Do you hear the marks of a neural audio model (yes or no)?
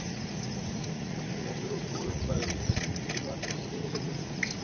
yes